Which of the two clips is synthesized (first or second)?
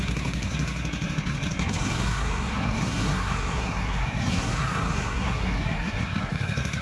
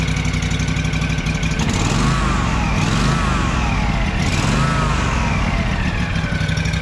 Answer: first